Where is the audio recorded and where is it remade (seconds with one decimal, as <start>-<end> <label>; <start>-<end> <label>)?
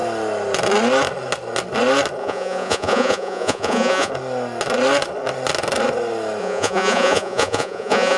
0.0-2.2 recorded; 2.2-4.1 remade; 4.1-6.4 recorded; 6.4-8.2 remade